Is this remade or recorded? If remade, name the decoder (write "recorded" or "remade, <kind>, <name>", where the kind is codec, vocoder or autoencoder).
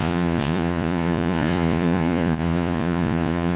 remade, vocoder, Vocos